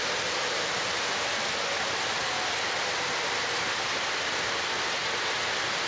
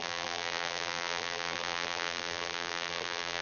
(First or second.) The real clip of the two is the first